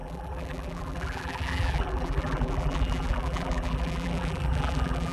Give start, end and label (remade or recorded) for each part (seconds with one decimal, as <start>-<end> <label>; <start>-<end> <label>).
0.0-5.1 remade